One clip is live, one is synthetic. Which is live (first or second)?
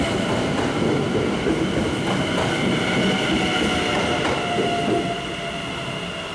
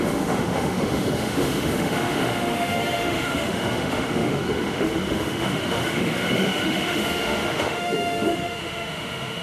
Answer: first